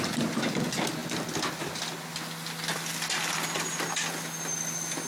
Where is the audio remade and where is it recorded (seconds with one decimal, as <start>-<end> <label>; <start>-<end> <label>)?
0.0-5.1 recorded